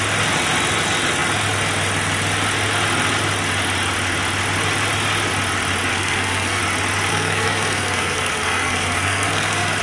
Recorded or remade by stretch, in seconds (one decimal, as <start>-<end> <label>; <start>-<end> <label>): 0.0-5.9 recorded; 5.9-6.6 remade; 6.6-7.1 recorded; 7.1-9.8 remade